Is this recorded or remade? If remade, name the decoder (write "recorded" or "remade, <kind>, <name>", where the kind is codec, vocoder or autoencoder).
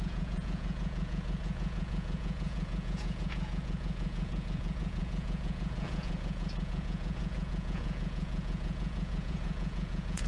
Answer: remade, vocoder, Vocos